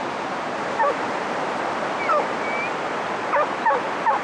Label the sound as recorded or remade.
recorded